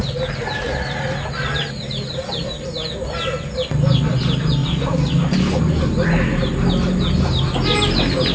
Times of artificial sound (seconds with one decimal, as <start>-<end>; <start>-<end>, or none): none